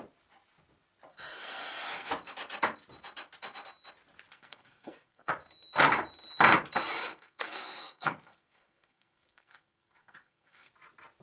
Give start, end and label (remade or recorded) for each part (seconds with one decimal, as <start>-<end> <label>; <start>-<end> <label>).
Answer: 0.0-1.1 recorded; 1.1-2.1 remade; 2.1-4.3 recorded; 4.3-5.3 remade; 5.3-7.1 recorded; 7.1-10.7 remade; 10.7-11.2 recorded